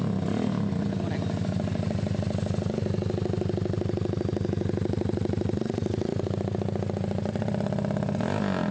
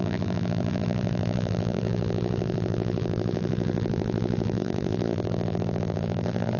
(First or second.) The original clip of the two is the first